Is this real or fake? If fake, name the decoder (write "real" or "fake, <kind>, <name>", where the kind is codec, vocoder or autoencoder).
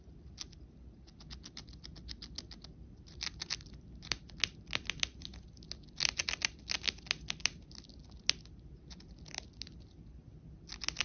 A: real